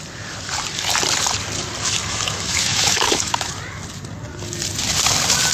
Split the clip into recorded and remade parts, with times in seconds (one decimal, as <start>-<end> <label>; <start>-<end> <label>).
0.0-2.0 recorded; 2.0-3.5 remade; 3.5-5.5 recorded